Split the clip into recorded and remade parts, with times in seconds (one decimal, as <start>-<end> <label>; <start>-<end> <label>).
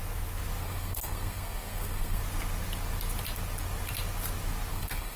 0.0-0.6 recorded; 0.6-2.2 remade; 2.2-4.7 recorded; 4.7-5.2 remade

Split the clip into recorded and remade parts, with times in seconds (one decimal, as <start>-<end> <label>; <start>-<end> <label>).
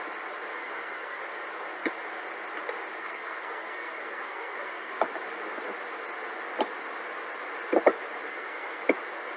0.0-0.5 recorded; 0.5-1.2 remade; 1.2-3.0 recorded; 3.0-4.9 remade; 4.9-8.3 recorded; 8.3-8.8 remade; 8.8-9.4 recorded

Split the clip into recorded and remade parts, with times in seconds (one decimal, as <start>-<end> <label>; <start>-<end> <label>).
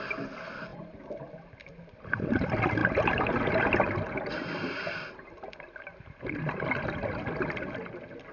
0.0-8.3 recorded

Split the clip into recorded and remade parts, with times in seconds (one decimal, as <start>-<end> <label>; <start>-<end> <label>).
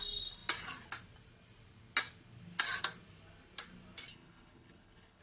0.0-4.1 recorded; 4.1-5.2 remade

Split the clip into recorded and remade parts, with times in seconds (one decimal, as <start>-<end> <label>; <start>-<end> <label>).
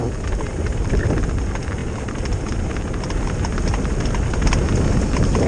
0.0-5.5 recorded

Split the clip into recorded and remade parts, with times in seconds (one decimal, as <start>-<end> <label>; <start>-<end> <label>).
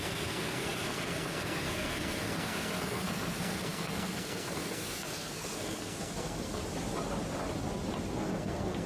0.0-6.6 remade; 6.6-8.2 recorded; 8.2-8.9 remade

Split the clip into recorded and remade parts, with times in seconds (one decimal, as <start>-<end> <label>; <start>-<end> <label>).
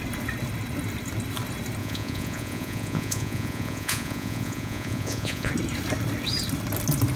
0.0-1.8 recorded; 1.8-5.5 remade; 5.5-7.2 recorded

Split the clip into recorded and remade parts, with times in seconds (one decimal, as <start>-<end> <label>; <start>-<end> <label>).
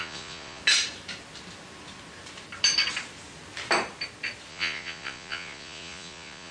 0.0-0.6 remade; 0.6-4.5 recorded; 4.5-6.5 remade